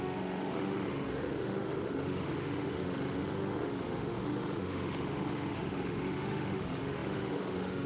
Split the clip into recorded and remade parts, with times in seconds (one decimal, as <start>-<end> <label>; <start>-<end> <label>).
0.0-7.9 remade